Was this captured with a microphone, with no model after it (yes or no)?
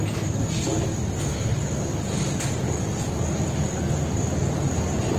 yes